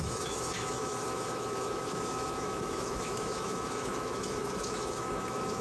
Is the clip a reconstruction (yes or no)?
yes